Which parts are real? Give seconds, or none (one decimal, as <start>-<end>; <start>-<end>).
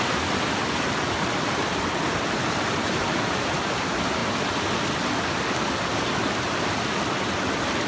0.0-7.9